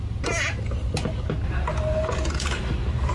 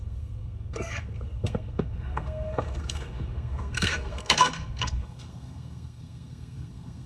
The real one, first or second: first